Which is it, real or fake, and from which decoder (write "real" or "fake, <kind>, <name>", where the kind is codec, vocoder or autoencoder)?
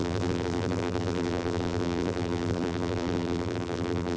fake, vocoder, BigVGAN v2